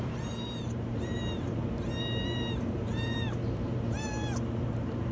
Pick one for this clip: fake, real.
fake